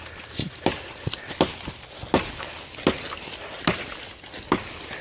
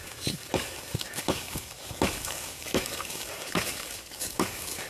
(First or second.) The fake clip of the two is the second